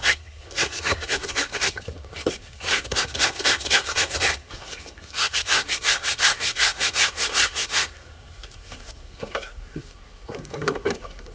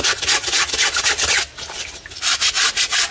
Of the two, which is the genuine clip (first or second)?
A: second